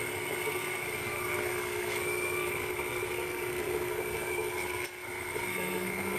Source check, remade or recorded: remade